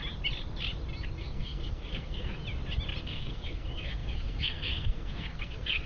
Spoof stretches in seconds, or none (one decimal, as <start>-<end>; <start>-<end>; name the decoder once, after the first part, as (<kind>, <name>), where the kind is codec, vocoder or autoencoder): 1.2-2.4 (codec, SNAC); 3.0-5.9